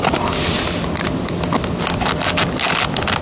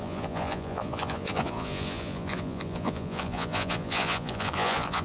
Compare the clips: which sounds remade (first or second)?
second